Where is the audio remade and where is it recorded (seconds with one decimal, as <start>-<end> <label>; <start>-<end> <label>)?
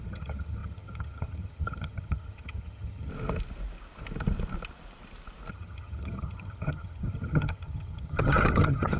0.0-3.1 remade; 3.1-5.5 recorded; 5.5-9.0 remade